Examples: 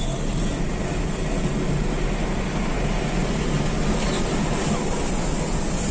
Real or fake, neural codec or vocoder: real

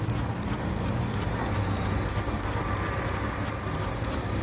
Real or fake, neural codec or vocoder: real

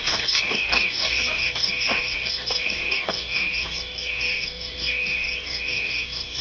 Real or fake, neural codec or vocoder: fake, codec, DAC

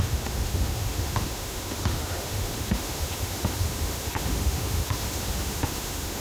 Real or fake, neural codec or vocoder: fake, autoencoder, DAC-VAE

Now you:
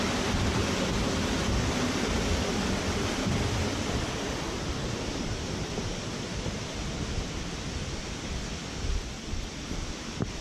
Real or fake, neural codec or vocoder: real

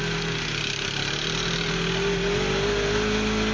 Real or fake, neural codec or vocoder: real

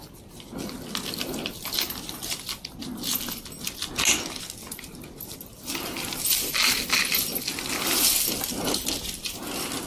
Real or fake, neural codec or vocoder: real